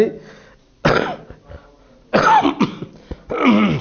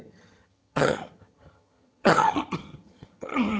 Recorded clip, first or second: first